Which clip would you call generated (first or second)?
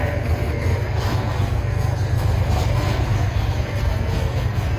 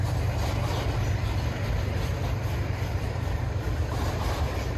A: first